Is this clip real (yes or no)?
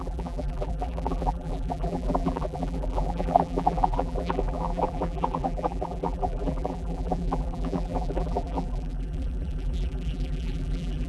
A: no